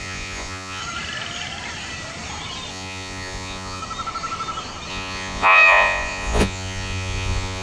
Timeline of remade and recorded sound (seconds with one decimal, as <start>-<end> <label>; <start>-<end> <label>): 0.0-0.8 remade; 0.8-2.7 recorded; 2.7-3.8 remade; 3.8-4.9 recorded; 4.9-7.6 remade